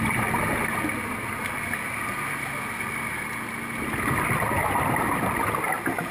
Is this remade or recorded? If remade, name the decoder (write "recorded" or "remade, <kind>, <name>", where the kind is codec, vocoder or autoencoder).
recorded